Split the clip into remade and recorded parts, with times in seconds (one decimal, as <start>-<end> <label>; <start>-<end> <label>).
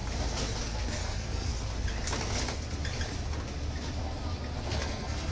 0.0-0.6 recorded; 0.6-1.5 remade; 1.5-4.7 recorded; 4.7-5.3 remade